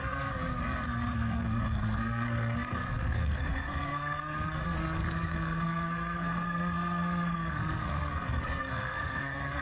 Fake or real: fake